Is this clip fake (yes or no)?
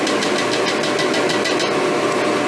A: no